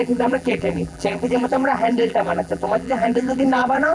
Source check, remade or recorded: remade